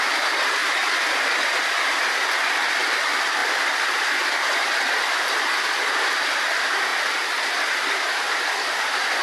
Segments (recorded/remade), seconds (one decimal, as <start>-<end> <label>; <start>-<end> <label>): 0.0-9.2 recorded